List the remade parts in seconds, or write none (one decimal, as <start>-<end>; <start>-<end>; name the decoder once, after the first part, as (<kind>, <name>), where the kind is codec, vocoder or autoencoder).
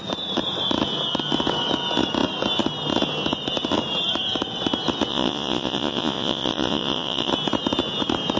5.1-7.3 (vocoder, Vocos)